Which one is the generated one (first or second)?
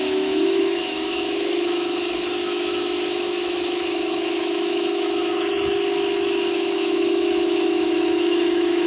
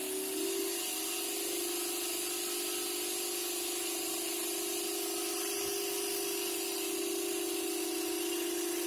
first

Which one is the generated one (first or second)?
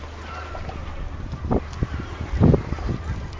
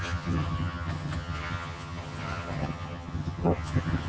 second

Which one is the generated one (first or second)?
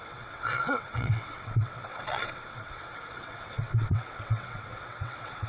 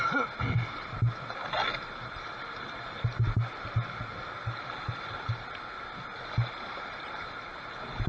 first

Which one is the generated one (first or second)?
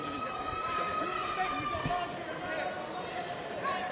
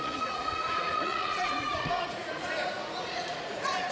second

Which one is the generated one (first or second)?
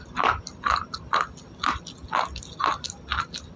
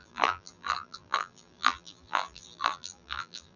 second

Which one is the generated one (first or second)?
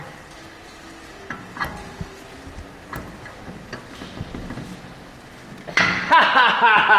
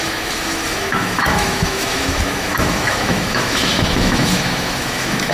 second